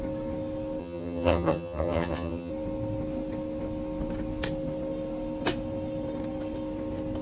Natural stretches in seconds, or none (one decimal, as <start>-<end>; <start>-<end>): 0.0-0.8; 2.5-7.2